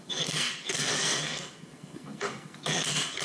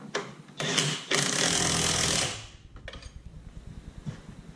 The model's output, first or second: first